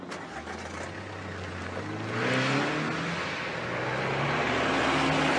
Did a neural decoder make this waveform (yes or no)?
no